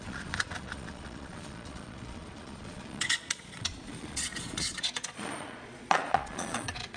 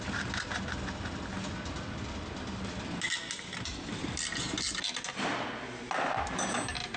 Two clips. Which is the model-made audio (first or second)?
first